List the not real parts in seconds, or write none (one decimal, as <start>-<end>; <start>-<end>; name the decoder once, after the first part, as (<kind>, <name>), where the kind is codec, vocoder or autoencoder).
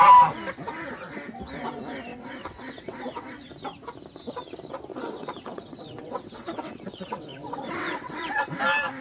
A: 2.1-3.5 (vocoder, WaveNeXt); 4.9-8.6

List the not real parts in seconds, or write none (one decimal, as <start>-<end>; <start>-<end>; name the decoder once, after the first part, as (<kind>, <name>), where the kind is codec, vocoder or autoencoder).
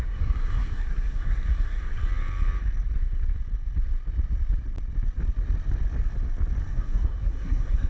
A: 0.0-2.0 (codec, SNAC); 6.7-7.9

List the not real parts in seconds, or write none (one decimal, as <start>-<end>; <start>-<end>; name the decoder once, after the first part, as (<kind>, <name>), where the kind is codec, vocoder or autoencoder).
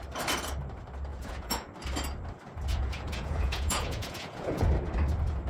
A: 1.1-1.7 (vocoder, Vocos); 2.7-4.7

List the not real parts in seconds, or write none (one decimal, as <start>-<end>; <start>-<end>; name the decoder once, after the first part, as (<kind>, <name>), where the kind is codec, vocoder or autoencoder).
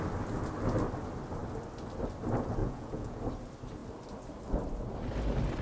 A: 2.6-3.2 (vocoder, Vocos)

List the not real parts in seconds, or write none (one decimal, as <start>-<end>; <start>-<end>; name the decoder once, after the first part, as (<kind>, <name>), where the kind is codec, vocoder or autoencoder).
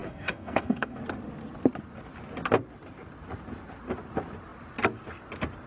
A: 0.0-1.0 (codec, SNAC)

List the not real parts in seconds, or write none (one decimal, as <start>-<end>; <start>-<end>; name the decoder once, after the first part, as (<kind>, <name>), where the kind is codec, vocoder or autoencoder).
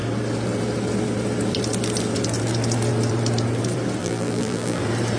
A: 4.0-4.8 (vocoder, BigVGAN v2)